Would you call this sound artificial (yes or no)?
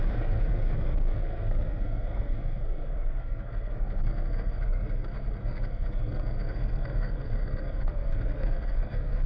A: yes